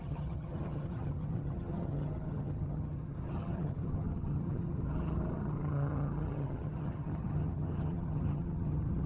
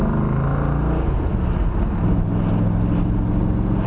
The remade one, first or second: first